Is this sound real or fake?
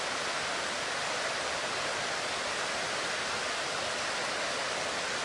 real